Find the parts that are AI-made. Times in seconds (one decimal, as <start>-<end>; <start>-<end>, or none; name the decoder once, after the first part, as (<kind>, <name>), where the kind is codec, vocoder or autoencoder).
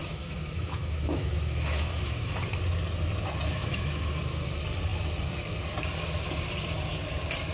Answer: 0.0-2.4 (autoencoder, DAC-VAE); 3.6-4.2